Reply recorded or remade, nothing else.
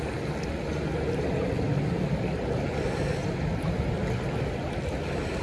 recorded